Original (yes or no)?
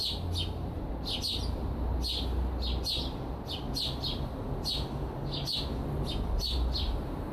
yes